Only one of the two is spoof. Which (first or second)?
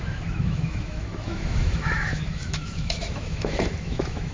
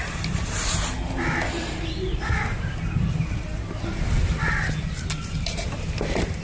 first